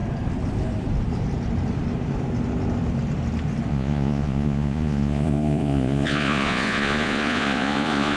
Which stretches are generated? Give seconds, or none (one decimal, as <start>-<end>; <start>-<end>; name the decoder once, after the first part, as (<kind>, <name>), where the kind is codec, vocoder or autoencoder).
3.7-8.2 (vocoder, Vocos)

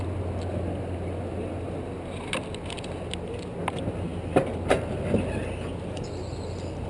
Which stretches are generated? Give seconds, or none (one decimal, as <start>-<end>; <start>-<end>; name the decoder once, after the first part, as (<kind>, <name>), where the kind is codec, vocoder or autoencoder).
none

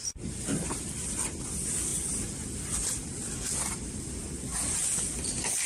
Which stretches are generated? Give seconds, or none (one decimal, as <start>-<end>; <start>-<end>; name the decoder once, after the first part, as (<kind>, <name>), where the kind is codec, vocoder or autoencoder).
0.0-1.9 (vocoder, BigVGAN v2); 2.6-4.5; 5.0-5.7

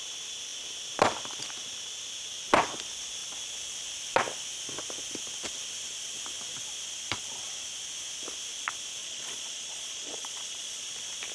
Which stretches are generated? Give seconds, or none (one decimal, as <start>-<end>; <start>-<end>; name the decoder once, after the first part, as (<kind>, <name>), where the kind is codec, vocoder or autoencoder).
9.0-10.8 (vocoder, Vocos)

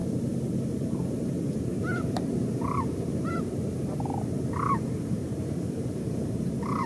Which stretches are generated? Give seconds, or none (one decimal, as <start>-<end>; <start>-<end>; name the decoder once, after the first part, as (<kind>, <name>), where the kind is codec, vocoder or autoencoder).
0.0-6.9 (vocoder, BigVGAN v2)

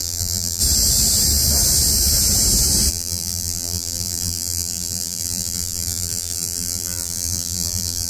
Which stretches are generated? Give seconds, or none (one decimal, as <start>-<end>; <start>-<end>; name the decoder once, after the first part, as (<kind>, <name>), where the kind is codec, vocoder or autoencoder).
0.0-0.6 (vocoder, BigVGAN v2); 2.9-8.1

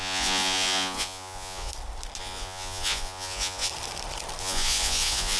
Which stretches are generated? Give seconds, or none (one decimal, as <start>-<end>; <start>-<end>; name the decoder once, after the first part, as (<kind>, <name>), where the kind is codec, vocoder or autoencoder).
0.0-1.7 (vocoder, Vocos); 2.2-3.7; 4.4-5.4

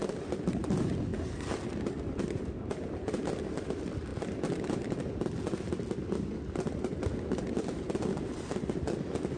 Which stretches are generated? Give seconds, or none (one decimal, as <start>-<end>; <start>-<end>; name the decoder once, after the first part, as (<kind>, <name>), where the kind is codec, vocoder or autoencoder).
none